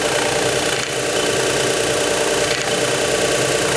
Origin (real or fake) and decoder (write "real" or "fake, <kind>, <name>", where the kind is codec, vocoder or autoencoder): real